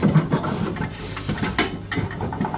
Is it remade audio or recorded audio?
recorded